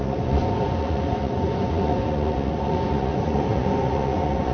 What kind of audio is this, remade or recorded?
remade